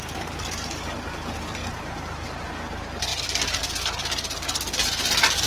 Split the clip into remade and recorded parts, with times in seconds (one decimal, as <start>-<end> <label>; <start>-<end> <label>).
0.0-1.6 recorded; 1.6-2.5 remade; 2.5-5.5 recorded